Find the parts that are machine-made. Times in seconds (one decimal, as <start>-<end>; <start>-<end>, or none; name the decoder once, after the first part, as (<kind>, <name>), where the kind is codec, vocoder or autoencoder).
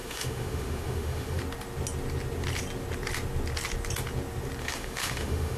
0.0-1.4 (autoencoder, DAC-VAE); 4.6-5.6